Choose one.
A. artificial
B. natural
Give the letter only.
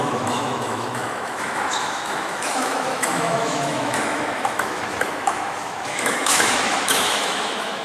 A